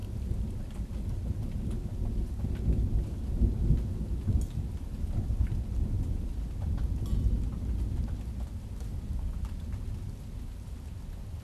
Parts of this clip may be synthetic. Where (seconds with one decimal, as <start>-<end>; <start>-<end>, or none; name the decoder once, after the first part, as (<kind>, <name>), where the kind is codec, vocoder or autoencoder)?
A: none